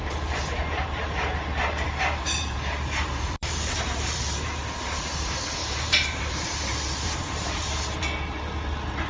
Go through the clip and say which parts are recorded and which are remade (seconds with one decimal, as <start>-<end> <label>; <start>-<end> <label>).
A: 0.0-5.0 remade; 5.0-5.6 recorded; 5.6-8.0 remade; 8.0-9.1 recorded